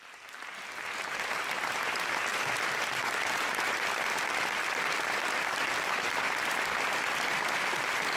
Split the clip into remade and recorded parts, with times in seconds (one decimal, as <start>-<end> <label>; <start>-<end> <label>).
0.0-2.3 recorded; 2.3-6.4 remade; 6.4-8.2 recorded